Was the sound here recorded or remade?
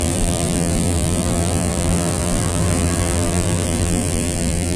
remade